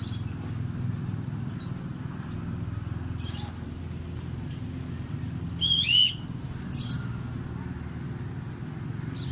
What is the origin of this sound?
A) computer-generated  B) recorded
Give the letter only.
B